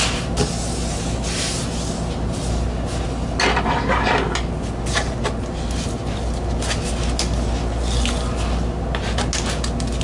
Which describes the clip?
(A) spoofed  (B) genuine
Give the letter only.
B